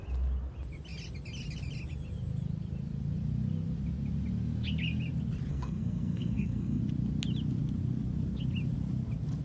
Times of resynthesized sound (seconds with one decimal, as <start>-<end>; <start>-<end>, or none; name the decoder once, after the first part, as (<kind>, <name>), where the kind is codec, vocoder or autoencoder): 5.5-6.8 (codec, SNAC)